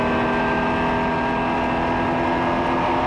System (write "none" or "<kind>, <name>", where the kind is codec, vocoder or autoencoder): none